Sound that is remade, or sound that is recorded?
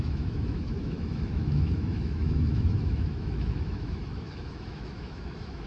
remade